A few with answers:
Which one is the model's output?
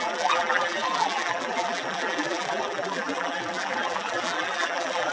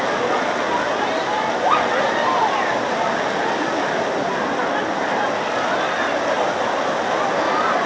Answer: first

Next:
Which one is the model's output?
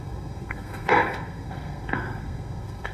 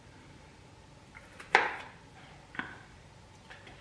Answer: first